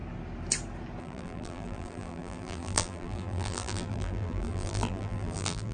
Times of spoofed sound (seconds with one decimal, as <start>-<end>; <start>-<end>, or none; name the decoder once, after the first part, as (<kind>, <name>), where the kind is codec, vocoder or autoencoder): 1.0-5.7 (vocoder, BigVGAN v2)